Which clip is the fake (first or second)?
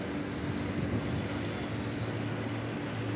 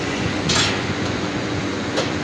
second